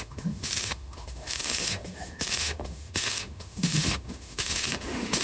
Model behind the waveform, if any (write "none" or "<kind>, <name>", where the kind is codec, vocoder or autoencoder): autoencoder, DAC-VAE